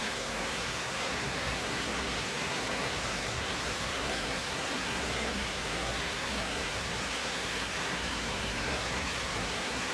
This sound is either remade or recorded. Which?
remade